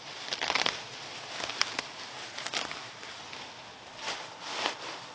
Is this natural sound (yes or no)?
yes